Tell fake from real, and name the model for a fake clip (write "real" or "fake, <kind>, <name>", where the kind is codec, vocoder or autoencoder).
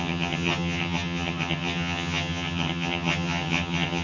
fake, vocoder, HiFi-GAN